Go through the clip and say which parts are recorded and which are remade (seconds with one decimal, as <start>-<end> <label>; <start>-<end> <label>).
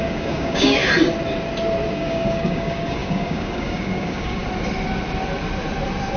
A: 0.0-0.8 remade; 0.8-1.9 recorded; 1.9-4.4 remade; 4.4-6.2 recorded